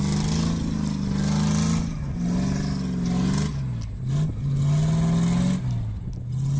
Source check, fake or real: real